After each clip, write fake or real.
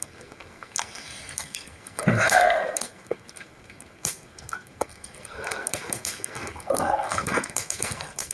fake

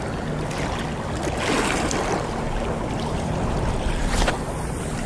real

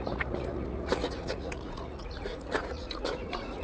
fake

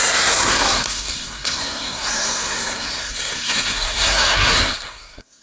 fake